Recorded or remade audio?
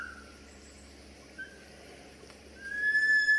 recorded